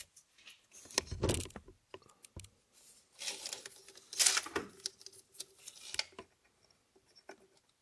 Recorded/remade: recorded